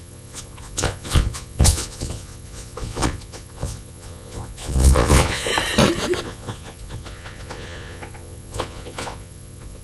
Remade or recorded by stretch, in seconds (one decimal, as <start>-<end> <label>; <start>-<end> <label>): 0.0-5.5 remade; 5.5-6.2 recorded; 6.2-9.8 remade

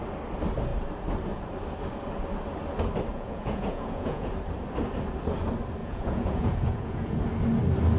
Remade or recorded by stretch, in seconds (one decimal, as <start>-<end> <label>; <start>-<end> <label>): 0.0-3.1 recorded; 3.1-4.3 remade; 4.3-5.8 recorded; 5.8-7.2 remade; 7.2-8.0 recorded

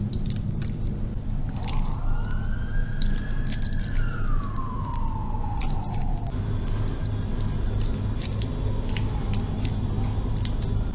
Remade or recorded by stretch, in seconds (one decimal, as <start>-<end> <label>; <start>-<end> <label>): 0.0-10.9 recorded

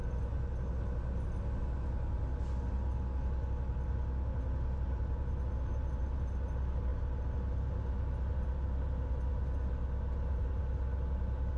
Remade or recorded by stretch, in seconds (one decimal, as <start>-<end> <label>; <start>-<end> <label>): 0.0-11.6 recorded

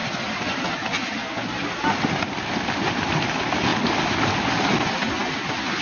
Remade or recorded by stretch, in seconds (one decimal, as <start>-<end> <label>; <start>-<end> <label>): 0.0-5.8 recorded

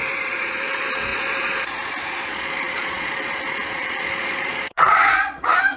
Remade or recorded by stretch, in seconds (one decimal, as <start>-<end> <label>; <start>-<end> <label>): 0.0-5.8 remade

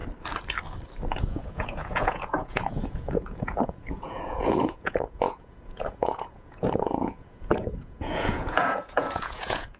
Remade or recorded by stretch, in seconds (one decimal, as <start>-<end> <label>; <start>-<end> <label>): 0.0-1.2 recorded; 1.2-9.8 remade